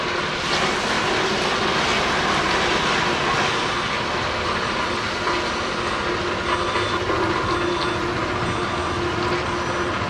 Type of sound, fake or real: real